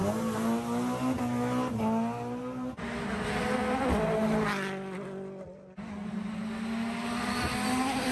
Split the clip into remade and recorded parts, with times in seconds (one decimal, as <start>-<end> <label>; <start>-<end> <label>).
0.0-8.1 recorded